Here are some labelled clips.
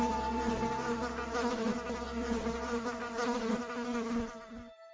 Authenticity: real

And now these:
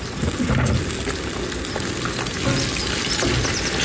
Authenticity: real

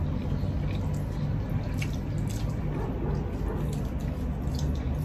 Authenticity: real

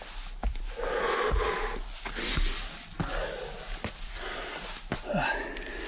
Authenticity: real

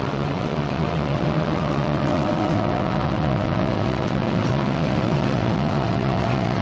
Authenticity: fake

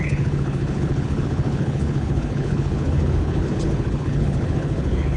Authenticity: fake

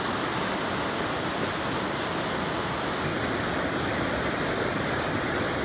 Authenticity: real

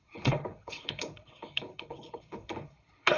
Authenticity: fake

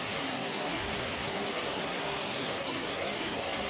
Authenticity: fake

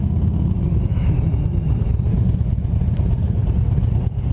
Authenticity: real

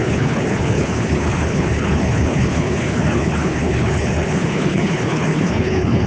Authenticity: fake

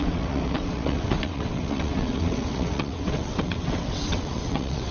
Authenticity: fake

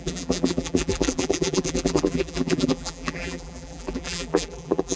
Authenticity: fake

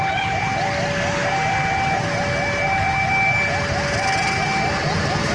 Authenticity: real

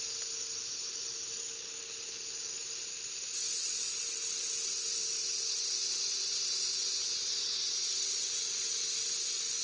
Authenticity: real